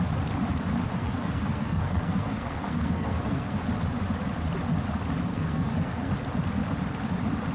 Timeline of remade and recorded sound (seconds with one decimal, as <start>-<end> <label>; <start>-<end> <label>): 0.0-1.0 recorded; 1.0-3.6 remade; 3.6-5.3 recorded; 5.3-6.1 remade; 6.1-7.5 recorded